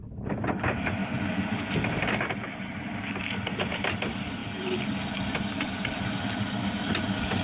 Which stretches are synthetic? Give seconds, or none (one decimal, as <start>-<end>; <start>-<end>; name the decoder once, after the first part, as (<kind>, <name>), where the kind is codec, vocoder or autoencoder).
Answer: none